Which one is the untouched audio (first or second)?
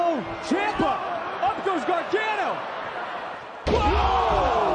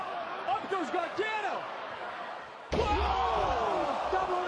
first